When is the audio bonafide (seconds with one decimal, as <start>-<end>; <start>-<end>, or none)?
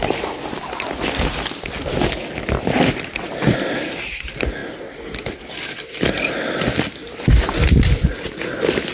0.0-8.9